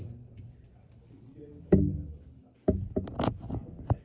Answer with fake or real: real